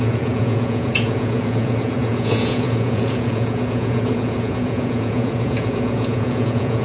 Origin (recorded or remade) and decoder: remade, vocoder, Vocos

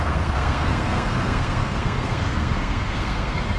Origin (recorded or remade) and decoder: remade, codec, SNAC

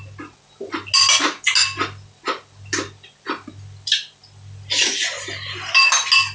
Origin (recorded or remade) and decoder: recorded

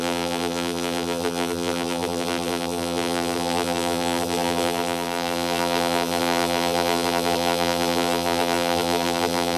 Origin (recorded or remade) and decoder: remade, vocoder, BigVGAN v2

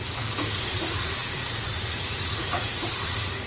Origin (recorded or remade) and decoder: remade, vocoder, Vocos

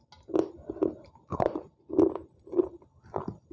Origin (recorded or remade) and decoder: recorded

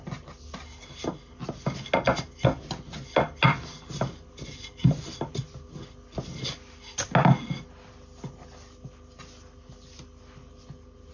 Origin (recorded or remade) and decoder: recorded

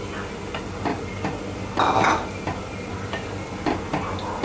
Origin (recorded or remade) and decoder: recorded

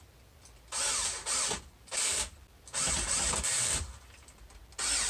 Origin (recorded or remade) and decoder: recorded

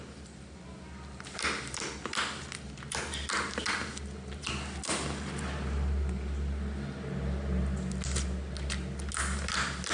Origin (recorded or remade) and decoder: recorded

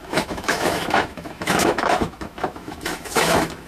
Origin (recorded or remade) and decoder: remade, autoencoder, DAC-VAE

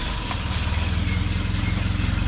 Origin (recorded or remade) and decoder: recorded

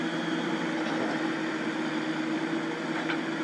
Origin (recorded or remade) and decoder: recorded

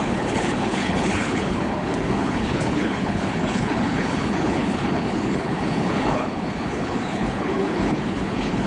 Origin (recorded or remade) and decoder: remade, codec, HILCodec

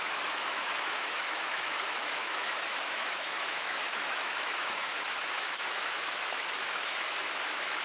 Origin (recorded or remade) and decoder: remade, autoencoder, DAC-VAE